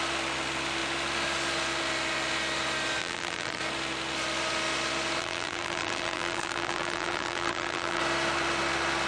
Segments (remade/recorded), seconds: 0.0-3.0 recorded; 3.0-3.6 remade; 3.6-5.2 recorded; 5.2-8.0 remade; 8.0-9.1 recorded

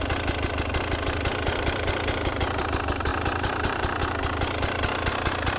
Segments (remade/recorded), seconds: 0.0-1.3 recorded; 1.3-2.6 remade; 2.6-3.1 recorded; 3.1-4.0 remade; 4.0-5.6 recorded

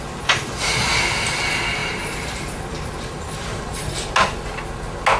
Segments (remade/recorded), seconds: 0.0-1.8 recorded; 1.8-4.1 remade; 4.1-5.2 recorded

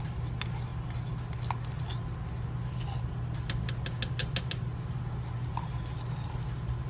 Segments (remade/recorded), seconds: 0.0-6.9 recorded